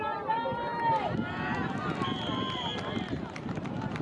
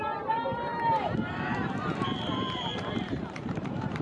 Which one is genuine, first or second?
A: first